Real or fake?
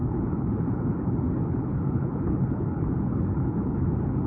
fake